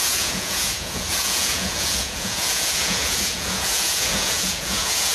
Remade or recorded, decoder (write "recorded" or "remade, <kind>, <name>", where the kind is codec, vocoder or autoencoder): remade, vocoder, Vocos